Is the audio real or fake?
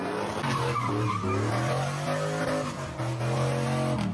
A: real